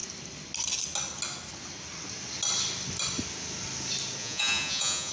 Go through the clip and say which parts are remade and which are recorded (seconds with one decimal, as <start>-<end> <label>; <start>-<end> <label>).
0.0-4.2 recorded; 4.2-5.1 remade